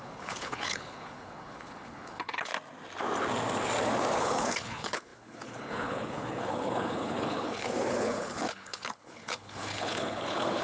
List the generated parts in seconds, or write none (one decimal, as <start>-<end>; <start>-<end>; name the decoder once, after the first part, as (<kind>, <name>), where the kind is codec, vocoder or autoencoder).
0.0-2.5 (codec, HILCodec); 4.2-10.6